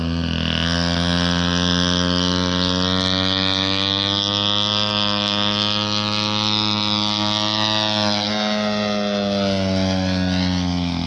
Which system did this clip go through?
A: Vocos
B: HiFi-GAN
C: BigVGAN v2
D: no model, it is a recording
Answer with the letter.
D